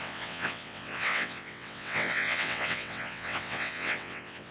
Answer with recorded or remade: remade